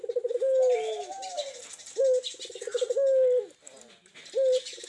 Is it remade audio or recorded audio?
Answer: recorded